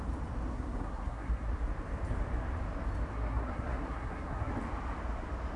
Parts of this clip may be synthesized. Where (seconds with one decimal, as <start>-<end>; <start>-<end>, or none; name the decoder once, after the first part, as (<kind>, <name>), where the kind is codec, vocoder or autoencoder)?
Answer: 0.5-1.5 (codec, SNAC); 3.1-4.5